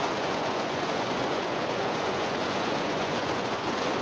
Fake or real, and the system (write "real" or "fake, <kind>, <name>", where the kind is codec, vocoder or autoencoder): fake, vocoder, Vocos